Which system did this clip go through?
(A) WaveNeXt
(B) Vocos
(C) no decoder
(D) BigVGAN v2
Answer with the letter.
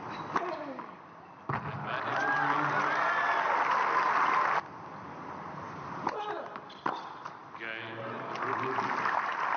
C